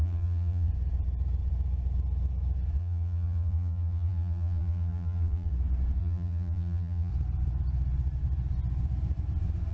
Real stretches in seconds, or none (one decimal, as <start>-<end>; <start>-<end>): 0.7-2.8; 5.5-6.0; 7.1-9.7